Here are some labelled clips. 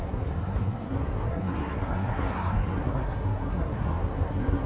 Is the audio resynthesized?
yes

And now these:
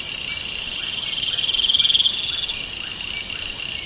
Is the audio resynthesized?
no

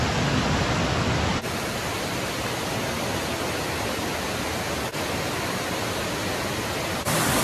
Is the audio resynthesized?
no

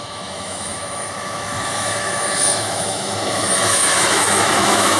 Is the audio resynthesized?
yes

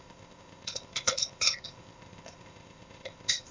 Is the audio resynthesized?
yes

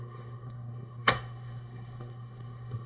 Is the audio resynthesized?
yes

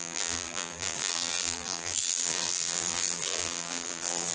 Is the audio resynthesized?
yes